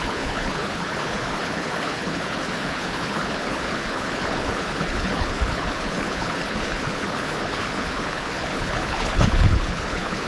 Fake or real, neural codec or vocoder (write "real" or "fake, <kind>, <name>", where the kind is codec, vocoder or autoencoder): fake, codec, HILCodec